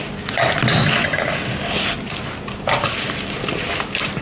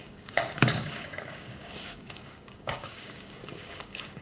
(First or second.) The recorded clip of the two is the first